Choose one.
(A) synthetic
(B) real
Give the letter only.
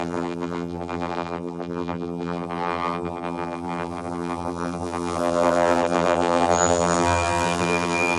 A